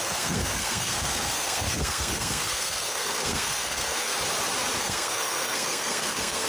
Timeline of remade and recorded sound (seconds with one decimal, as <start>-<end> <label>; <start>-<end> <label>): 0.0-4.1 remade; 4.1-4.8 recorded; 4.8-6.5 remade